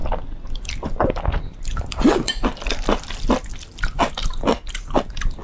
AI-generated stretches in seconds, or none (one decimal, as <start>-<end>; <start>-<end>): none